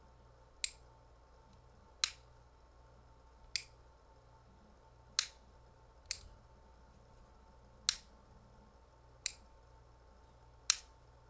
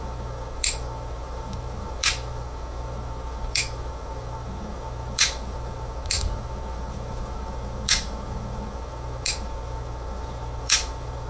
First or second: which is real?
first